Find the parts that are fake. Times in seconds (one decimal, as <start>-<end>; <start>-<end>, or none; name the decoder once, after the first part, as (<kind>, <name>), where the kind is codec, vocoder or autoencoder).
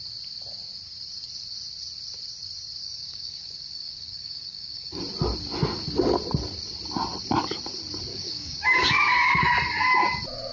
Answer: 2.8-5.0 (codec, DAC); 8.1-9.4